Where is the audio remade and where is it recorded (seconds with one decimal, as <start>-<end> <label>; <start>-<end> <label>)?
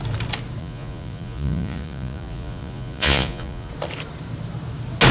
0.0-0.6 recorded; 0.6-3.7 remade; 3.7-5.1 recorded